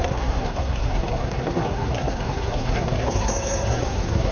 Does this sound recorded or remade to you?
remade